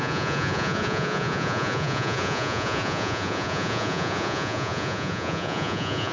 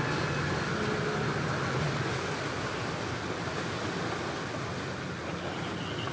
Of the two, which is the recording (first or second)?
second